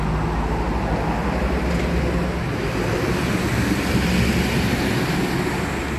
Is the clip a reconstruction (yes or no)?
no